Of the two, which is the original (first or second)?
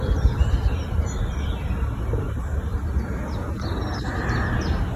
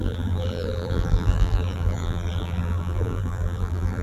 first